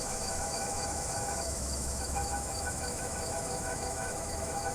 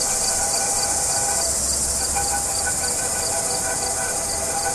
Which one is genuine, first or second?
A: second